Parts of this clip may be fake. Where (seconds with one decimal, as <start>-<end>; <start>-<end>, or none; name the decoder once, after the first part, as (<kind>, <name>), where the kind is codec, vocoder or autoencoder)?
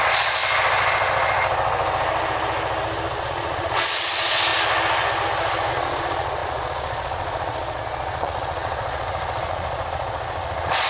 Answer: 0.0-0.4 (vocoder, Vocos); 3.2-4.5; 5.7-10.9